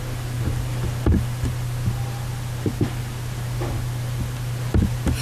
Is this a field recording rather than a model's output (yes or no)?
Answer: yes